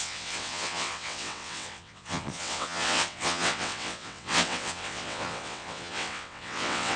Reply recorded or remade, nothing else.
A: remade